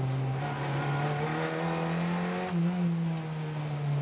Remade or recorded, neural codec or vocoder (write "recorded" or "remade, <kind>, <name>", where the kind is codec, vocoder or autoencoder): recorded